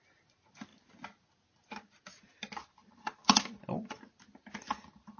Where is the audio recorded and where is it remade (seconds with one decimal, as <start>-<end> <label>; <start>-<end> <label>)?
0.0-5.2 recorded